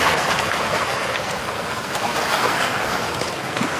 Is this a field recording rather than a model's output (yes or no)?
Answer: no